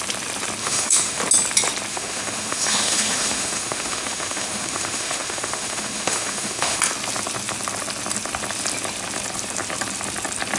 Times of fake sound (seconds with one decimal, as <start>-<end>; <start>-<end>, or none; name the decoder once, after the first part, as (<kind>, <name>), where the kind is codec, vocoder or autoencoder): 0.6-1.2 (autoencoder, DAC-VAE); 1.9-6.8